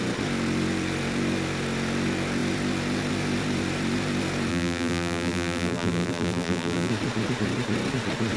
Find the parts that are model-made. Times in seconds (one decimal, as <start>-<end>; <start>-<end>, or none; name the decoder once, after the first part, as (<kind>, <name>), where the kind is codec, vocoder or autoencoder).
4.5-6.9 (vocoder, BigVGAN v2)